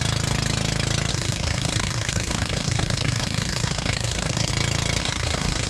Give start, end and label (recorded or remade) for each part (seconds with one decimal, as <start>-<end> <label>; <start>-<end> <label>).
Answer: 0.0-1.1 recorded; 1.1-4.5 remade; 4.5-5.0 recorded; 5.0-5.7 remade